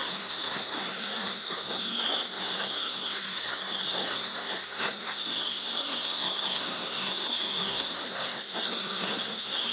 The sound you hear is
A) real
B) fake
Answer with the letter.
B